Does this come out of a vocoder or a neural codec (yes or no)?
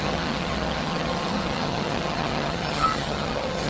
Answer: yes